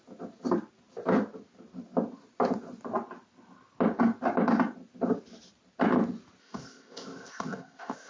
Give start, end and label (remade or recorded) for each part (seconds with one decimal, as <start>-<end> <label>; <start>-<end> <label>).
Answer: 0.0-6.4 recorded; 6.4-8.1 remade